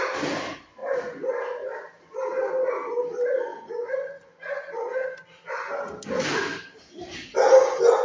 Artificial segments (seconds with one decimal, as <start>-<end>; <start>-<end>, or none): 0.8-1.3